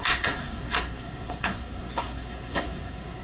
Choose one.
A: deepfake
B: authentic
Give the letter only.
A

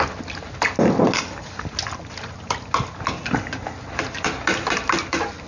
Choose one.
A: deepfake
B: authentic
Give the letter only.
B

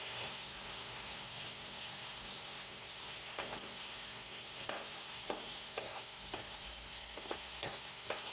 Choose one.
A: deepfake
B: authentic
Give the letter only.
A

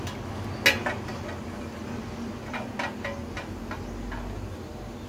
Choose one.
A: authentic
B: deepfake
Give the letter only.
A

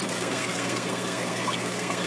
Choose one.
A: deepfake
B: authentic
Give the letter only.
A